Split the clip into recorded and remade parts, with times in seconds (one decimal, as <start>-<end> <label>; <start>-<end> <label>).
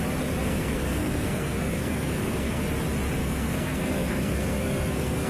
0.0-0.4 recorded; 0.4-2.6 remade; 2.6-3.2 recorded; 3.2-5.3 remade